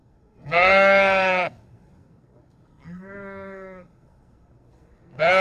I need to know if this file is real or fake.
fake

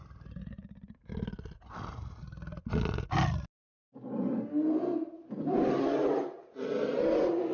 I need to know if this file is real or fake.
real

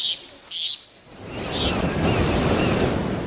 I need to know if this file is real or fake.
real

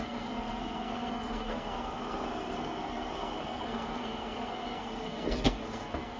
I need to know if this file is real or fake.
fake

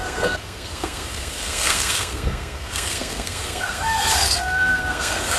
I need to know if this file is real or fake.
fake